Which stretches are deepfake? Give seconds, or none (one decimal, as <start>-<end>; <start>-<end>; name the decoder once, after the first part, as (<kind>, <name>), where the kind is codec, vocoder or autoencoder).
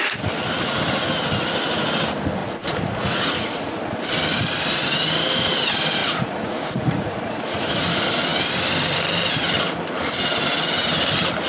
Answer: 2.4-3.8 (vocoder, Vocos); 6.0-7.9